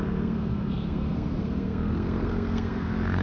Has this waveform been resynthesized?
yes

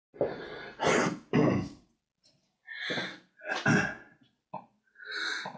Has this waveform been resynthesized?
no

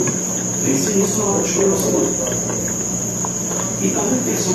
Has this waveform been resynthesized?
no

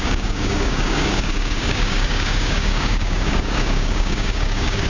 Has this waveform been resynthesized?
yes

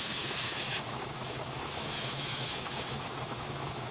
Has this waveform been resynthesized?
yes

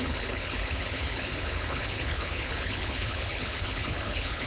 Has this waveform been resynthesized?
yes